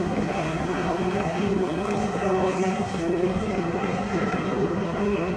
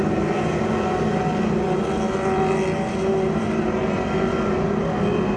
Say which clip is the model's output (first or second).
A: first